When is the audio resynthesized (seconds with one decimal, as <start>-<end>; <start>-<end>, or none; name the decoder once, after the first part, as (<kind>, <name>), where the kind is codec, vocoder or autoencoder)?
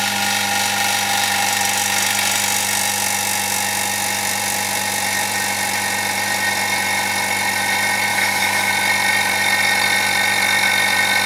8.1-8.7 (autoencoder, DAC-VAE)